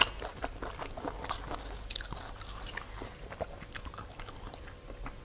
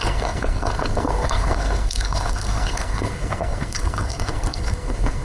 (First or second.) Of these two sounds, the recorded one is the first